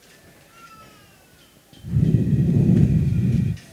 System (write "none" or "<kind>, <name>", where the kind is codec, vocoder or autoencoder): vocoder, BigVGAN v2